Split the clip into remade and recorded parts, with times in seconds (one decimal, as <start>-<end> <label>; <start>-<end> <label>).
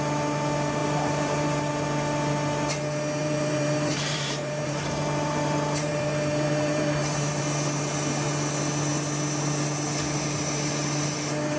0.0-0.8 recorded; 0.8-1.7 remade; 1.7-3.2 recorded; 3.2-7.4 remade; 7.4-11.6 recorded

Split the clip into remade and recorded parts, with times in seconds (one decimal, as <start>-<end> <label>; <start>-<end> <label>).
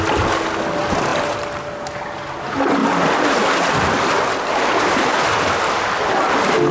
0.0-6.7 recorded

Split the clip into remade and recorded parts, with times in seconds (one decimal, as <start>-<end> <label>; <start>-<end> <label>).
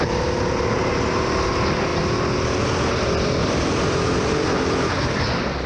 0.0-5.7 recorded